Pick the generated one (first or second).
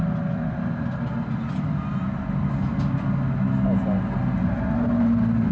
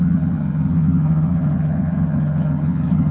second